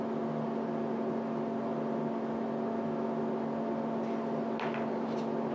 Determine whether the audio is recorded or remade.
recorded